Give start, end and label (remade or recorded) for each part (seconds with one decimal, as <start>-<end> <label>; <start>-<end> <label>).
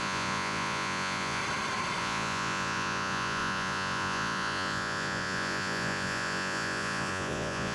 0.0-1.4 remade; 1.4-2.0 recorded; 2.0-7.7 remade